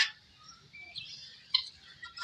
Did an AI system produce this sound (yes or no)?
no